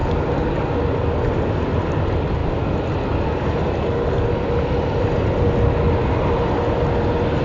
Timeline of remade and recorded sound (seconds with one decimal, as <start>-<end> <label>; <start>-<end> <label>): 0.0-7.4 recorded